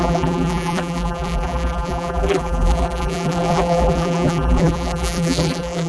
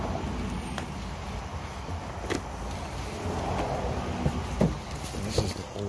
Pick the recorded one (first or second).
second